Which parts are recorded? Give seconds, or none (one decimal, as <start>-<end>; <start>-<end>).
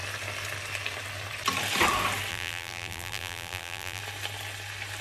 0.0-2.3; 4.0-5.0